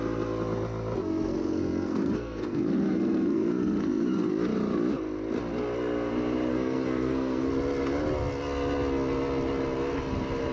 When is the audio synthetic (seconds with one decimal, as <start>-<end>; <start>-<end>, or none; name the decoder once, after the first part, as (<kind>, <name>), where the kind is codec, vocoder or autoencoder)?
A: 1.0-4.3 (codec, SNAC); 6.5-7.5